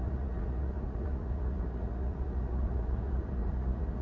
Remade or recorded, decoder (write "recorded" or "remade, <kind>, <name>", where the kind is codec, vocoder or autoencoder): remade, vocoder, Vocos